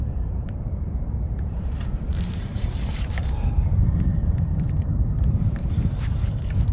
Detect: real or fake fake